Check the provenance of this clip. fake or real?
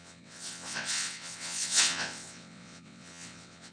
fake